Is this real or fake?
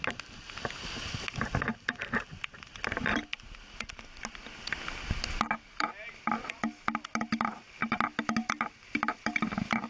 real